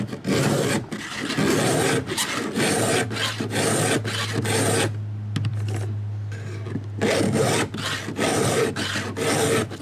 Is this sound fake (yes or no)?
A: no